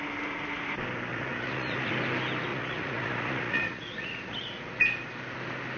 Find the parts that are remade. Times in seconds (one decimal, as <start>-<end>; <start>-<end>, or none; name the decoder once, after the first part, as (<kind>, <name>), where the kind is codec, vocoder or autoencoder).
1.1-1.9 (vocoder, Vocos); 2.5-4.8